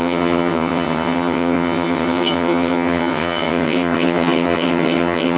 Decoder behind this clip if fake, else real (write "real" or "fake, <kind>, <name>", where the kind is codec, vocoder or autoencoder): fake, vocoder, HiFi-GAN